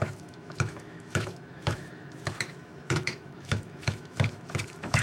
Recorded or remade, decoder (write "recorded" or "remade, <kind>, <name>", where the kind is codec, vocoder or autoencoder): remade, autoencoder, DAC-VAE